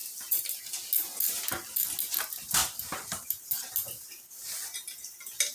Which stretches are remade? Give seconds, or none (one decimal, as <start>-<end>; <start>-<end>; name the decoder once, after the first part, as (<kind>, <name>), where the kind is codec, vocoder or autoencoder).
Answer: 0.0-0.6 (vocoder, BigVGAN v2)